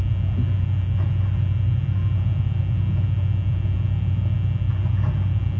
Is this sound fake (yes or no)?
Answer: no